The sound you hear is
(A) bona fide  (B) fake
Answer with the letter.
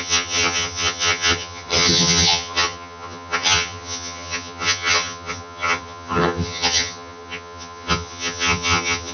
B